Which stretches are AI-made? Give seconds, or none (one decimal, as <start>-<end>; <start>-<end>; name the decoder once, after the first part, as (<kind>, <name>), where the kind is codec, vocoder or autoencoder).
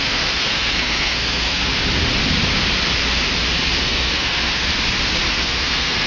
0.0-1.7 (codec, SNAC); 3.8-4.7; 5.3-6.1